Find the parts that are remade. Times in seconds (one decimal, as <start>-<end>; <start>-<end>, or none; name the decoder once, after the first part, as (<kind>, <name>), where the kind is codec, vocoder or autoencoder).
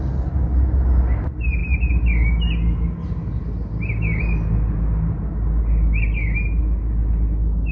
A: none